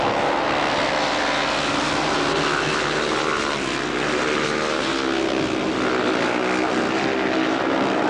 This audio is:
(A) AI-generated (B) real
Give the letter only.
B